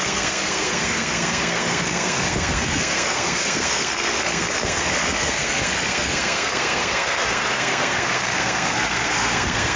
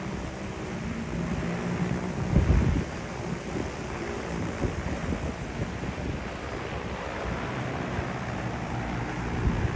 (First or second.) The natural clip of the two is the second